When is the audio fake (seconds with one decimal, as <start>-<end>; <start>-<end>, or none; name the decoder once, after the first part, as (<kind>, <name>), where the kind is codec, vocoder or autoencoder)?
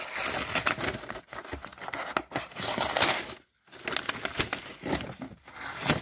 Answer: none